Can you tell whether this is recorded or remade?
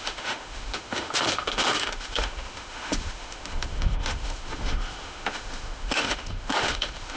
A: remade